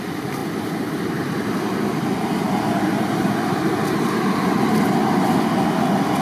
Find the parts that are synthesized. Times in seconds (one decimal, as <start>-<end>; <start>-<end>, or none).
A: none